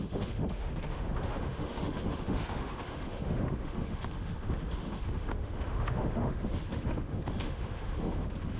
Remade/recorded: remade